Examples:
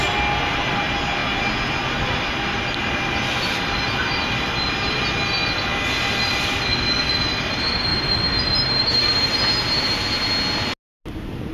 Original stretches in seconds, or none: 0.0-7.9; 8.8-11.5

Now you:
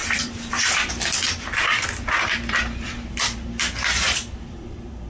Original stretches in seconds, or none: 0.9-1.7

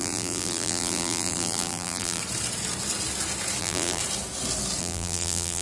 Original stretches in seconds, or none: 2.2-3.6; 4.0-4.8

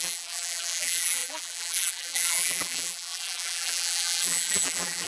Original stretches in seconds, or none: none

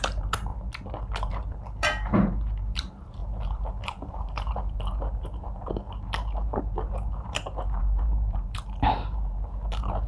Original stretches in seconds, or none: 0.5-1.3

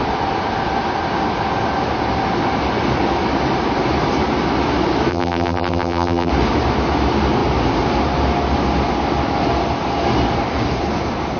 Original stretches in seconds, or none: 0.0-5.1; 6.3-11.4

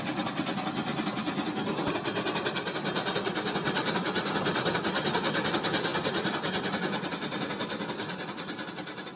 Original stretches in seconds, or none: 0.0-9.2

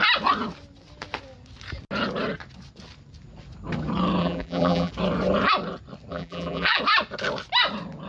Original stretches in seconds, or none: 0.0-4.2; 4.9-6.1; 6.8-8.1